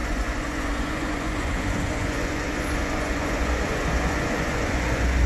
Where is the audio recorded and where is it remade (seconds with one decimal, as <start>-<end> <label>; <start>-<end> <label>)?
0.0-5.3 remade